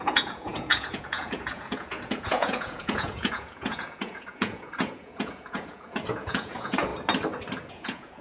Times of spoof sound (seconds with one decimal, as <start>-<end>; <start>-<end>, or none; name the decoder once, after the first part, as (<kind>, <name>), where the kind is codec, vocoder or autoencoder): 0.0-6.9 (vocoder, Vocos); 7.7-8.2